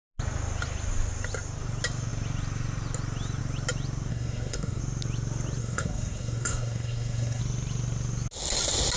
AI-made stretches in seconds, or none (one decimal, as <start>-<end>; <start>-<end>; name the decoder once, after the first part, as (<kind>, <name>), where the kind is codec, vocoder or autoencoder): 4.1-4.8 (codec, SNAC); 5.6-7.4